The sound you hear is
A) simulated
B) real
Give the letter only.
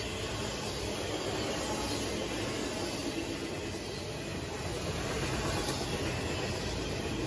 B